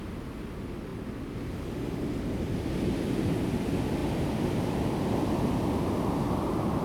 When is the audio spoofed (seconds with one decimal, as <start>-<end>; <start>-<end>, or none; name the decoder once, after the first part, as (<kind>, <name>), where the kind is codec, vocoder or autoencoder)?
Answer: none